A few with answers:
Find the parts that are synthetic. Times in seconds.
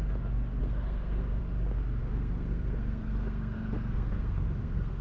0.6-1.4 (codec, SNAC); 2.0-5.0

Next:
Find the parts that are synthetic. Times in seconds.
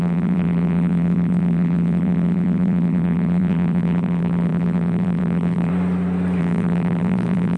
0.0-5.7 (vocoder, BigVGAN v2); 6.4-7.6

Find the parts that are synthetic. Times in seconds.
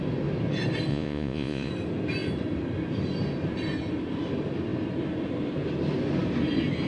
0.9-1.7 (vocoder, Vocos)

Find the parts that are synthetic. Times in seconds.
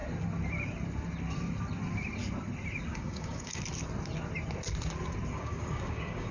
2.9-3.6 (codec, DAC); 5.3-6.3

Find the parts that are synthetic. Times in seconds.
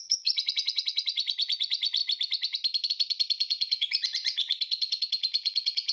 0.0-2.0 (vocoder, Vocos); 2.9-5.9